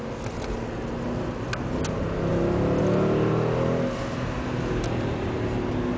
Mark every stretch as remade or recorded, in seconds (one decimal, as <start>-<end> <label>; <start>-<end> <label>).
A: 0.0-6.0 recorded